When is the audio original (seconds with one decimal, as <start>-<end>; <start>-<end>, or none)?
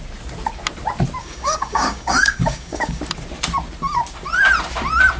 0.0-1.2; 3.0-5.2